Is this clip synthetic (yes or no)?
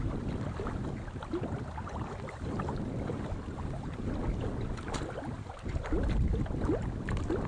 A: no